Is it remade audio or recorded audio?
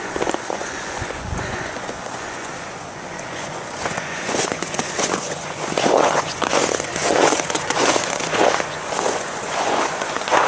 remade